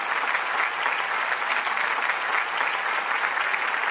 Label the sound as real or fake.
real